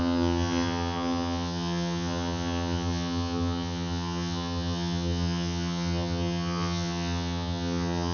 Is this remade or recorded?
remade